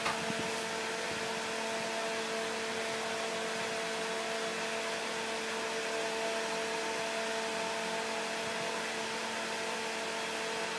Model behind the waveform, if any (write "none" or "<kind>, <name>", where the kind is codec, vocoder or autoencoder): none